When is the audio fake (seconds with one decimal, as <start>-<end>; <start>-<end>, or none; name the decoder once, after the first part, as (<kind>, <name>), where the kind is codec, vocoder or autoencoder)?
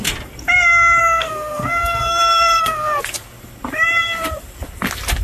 1.0-3.0 (codec, SNAC)